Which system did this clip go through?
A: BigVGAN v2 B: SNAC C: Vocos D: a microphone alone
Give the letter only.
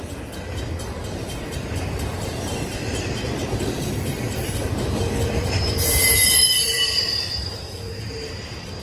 A